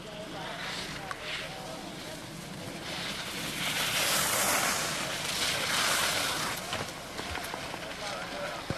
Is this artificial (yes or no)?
no